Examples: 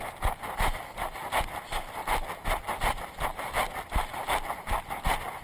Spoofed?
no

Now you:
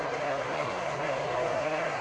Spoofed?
yes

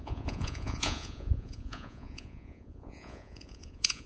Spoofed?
yes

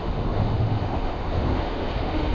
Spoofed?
yes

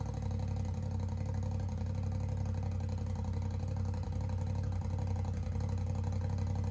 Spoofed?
no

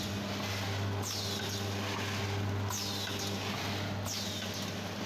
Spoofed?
no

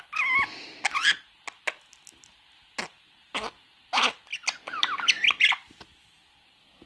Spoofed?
no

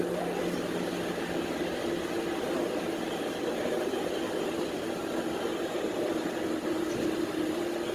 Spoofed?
no